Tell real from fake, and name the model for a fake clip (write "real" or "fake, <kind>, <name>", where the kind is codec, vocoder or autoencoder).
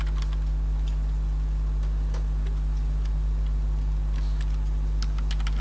real